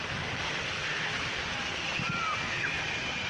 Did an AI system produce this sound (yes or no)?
no